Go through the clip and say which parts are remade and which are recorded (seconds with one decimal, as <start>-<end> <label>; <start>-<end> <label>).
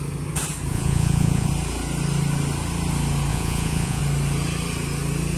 0.0-0.7 recorded; 0.7-1.5 remade; 1.5-3.3 recorded; 3.3-4.0 remade; 4.0-5.4 recorded